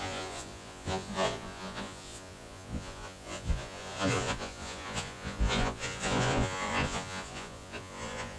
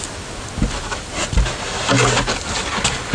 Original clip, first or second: second